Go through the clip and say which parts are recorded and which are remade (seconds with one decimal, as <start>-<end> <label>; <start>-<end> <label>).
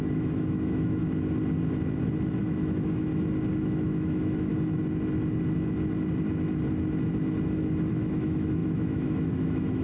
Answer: 0.0-1.0 remade; 1.0-2.4 recorded; 2.4-3.1 remade; 3.1-3.6 recorded; 3.6-4.5 remade; 4.5-7.9 recorded; 7.9-9.8 remade